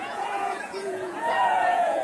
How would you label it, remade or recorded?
remade